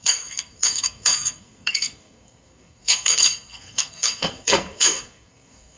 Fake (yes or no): yes